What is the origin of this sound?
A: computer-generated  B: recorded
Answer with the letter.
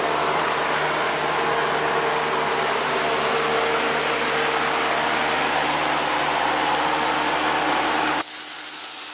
B